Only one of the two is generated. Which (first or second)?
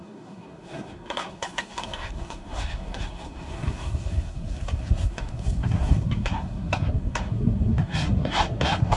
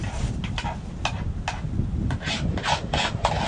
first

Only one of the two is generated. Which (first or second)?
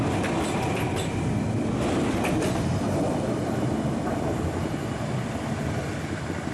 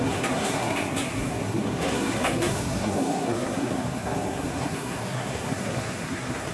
second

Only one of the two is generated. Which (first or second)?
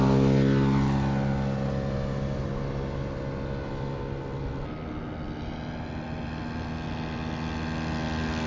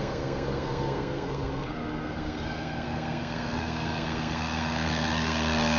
second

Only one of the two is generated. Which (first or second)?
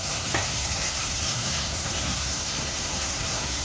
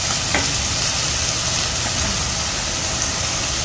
first